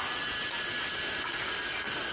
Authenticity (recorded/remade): recorded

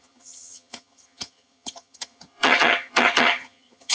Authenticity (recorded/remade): remade